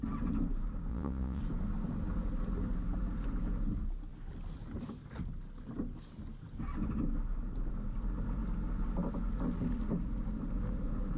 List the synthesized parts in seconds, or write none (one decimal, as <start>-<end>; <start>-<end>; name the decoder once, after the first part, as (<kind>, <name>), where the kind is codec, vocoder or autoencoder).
0.9-1.4 (vocoder, Vocos)

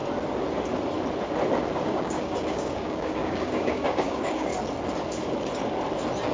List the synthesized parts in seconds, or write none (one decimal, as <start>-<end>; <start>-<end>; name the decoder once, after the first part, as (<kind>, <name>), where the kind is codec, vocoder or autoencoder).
1.8-4.5 (codec, DAC)

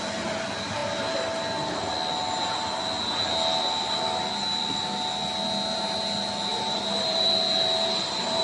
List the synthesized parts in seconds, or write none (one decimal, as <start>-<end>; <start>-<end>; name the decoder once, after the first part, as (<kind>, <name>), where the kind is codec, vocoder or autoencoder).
6.5-8.4 (vocoder, BigVGAN v2)

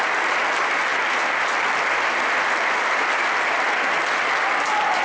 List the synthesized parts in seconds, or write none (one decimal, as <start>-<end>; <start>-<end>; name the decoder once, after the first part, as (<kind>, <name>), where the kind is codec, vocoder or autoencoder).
none

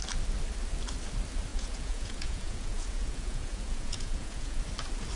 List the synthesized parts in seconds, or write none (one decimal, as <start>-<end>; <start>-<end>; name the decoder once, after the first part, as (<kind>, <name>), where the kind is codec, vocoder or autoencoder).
1.5-4.6 (vocoder, Vocos)